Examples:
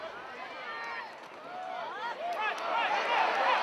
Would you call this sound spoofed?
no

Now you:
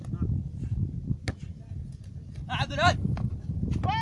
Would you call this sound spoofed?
no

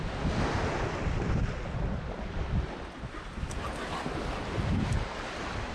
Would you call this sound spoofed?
no